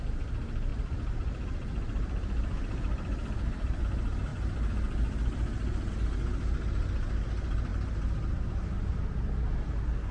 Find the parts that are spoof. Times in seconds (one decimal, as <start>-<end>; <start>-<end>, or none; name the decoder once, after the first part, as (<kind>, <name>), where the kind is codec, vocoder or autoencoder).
0.7-3.8 (vocoder, BigVGAN v2)